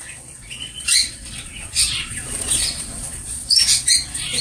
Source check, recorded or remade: remade